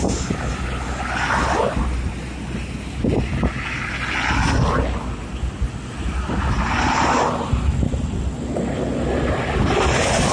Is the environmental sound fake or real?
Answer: real